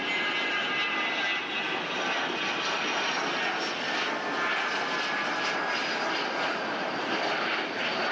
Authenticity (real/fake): real